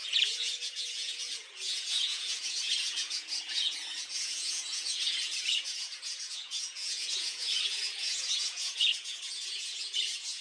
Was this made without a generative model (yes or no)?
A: no